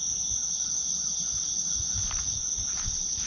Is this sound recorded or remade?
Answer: recorded